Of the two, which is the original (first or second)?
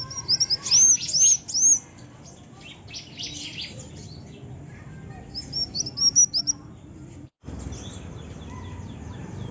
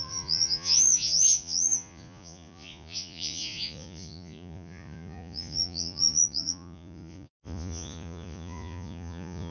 first